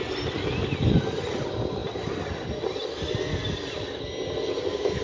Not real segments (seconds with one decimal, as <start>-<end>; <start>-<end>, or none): none